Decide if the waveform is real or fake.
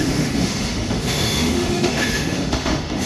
fake